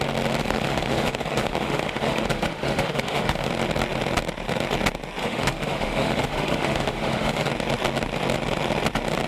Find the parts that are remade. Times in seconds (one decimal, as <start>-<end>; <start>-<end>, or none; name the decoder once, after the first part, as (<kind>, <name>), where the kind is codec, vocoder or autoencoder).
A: 0.4-3.5 (autoencoder, DAC-VAE); 5.2-7.5